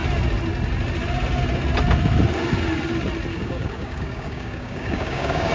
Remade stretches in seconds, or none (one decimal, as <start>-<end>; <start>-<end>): 3.3-5.5